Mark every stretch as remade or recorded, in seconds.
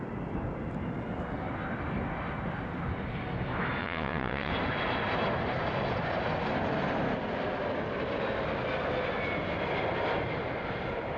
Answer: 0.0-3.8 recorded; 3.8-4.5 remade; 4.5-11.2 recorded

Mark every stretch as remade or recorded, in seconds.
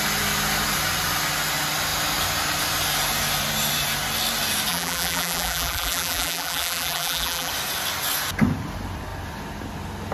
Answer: 0.0-4.7 recorded; 4.7-7.5 remade; 7.5-10.1 recorded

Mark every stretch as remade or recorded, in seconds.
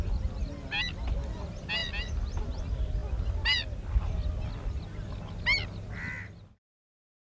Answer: 0.0-7.4 recorded